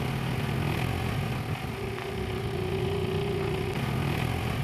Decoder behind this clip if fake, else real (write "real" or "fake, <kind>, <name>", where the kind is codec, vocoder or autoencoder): real